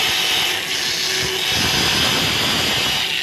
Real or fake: real